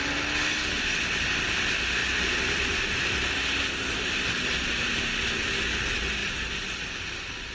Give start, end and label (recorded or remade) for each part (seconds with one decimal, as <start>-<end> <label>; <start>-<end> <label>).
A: 0.0-2.0 recorded; 2.0-4.7 remade; 4.7-7.5 recorded